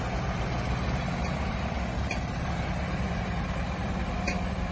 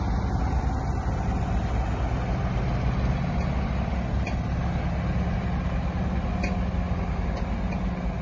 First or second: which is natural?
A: second